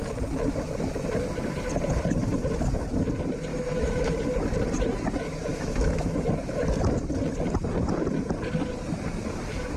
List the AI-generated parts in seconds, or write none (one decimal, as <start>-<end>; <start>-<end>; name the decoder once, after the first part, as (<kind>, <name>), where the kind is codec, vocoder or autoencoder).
3.5-4.2 (autoencoder, DAC-VAE); 5.5-6.3